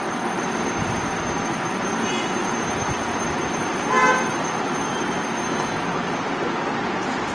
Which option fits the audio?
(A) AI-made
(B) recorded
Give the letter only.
B